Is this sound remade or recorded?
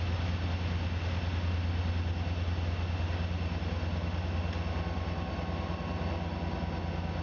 recorded